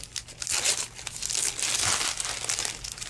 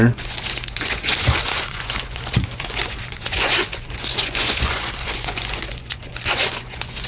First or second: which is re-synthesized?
second